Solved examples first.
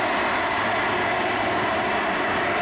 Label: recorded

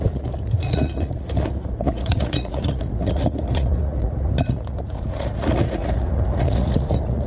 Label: remade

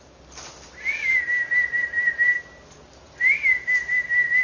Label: recorded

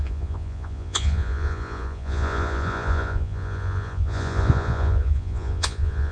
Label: remade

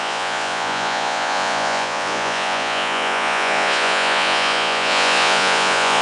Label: remade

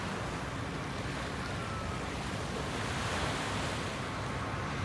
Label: recorded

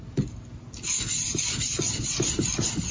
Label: recorded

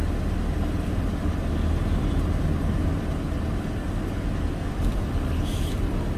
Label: recorded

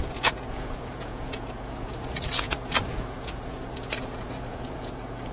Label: remade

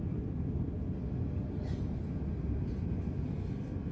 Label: recorded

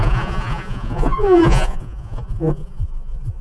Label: remade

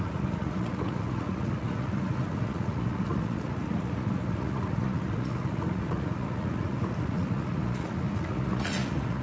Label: remade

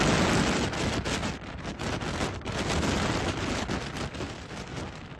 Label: recorded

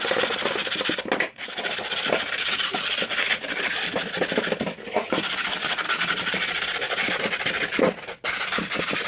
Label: recorded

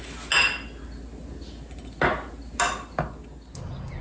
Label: recorded